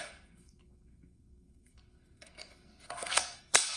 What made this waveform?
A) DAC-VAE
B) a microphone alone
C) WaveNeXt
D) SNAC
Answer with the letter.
D